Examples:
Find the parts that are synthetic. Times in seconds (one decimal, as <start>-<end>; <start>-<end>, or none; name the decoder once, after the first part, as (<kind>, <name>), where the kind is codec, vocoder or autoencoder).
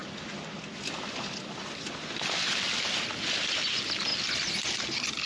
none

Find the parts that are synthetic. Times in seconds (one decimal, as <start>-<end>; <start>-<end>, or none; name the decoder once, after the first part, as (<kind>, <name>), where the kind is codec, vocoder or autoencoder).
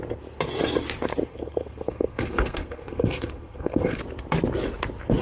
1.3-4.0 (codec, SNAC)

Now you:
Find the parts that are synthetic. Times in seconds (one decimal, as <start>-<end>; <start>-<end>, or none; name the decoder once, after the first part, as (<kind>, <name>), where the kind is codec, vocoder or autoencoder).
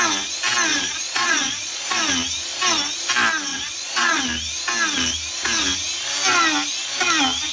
0.7-2.0 (vocoder, Vocos); 3.5-4.2